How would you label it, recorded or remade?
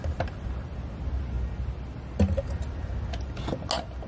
recorded